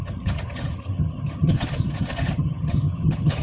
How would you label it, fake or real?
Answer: fake